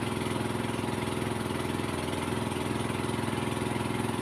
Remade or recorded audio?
recorded